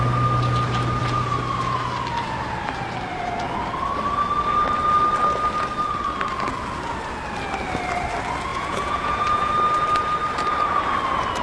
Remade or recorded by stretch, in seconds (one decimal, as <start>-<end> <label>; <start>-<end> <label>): 0.0-8.5 recorded; 8.5-9.5 remade; 9.5-11.4 recorded